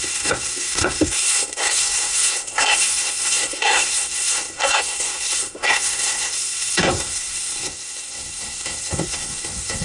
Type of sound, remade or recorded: remade